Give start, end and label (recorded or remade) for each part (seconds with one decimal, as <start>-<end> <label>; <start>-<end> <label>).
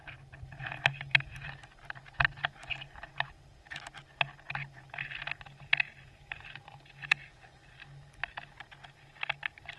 0.0-7.0 recorded; 7.0-7.7 remade; 7.7-9.8 recorded